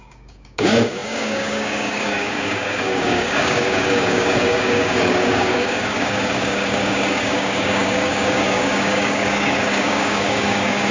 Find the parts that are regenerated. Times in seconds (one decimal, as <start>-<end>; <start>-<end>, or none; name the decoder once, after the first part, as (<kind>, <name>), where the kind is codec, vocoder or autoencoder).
0.0-10.9 (codec, DAC)